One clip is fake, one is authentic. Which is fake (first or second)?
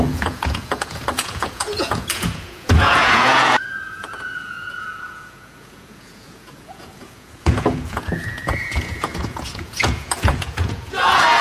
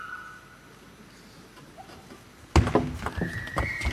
first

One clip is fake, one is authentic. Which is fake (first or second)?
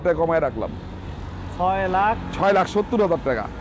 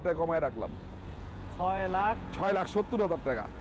second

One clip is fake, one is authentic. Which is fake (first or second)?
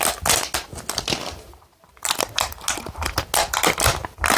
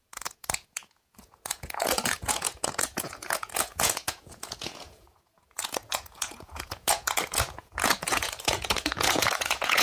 second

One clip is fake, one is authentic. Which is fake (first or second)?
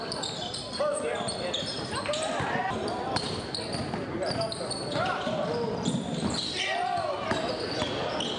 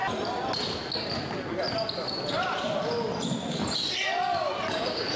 first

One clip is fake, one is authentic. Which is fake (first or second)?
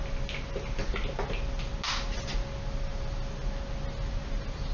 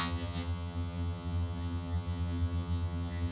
second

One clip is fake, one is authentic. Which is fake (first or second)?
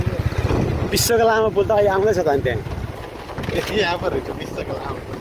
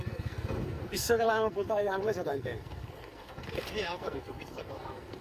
second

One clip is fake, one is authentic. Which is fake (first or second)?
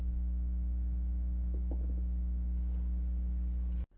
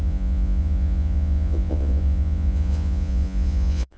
second